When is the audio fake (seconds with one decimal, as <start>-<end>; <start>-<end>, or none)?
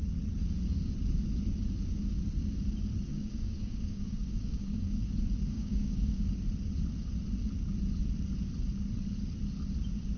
3.1-5.0; 5.5-6.2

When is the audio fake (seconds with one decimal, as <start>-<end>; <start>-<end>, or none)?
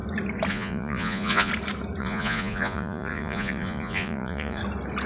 0.5-1.5; 2.0-4.6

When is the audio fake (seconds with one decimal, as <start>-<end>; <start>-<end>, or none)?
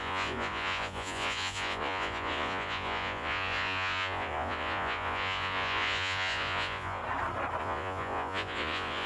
0.0-7.0; 7.6-9.1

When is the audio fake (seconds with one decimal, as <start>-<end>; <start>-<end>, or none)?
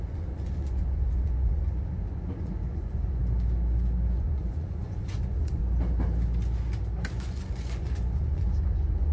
0.0-3.2; 4.2-5.6; 7.1-9.1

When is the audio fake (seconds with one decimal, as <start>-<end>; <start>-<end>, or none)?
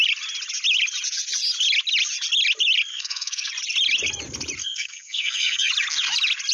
2.9-3.5; 4.6-5.7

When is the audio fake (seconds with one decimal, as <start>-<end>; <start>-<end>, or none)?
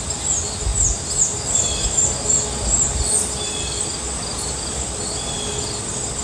none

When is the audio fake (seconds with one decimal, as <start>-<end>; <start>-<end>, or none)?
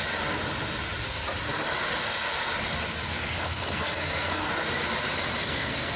3.1-4.5; 5.4-6.0